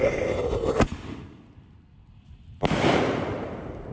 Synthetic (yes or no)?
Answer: no